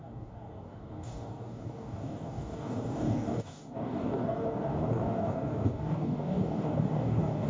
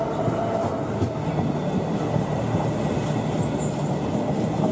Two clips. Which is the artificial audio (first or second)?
first